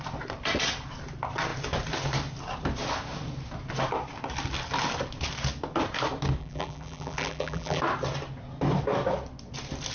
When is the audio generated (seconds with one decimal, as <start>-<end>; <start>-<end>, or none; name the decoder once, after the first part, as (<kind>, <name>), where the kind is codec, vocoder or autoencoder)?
6.4-7.8 (vocoder, BigVGAN v2)